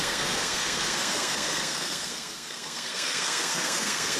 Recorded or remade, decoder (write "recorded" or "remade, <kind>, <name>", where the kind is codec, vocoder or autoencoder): remade, codec, SNAC